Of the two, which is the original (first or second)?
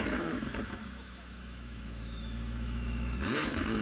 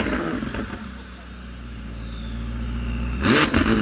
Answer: second